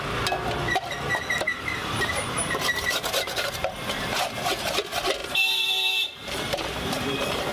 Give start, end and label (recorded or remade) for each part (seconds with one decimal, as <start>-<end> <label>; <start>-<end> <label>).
0.0-1.8 recorded; 1.8-4.2 remade; 4.2-5.2 recorded; 5.2-7.5 remade